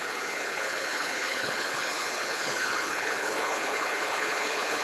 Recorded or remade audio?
remade